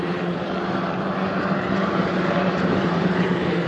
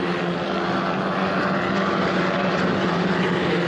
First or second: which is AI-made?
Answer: first